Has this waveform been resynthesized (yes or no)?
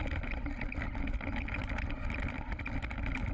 no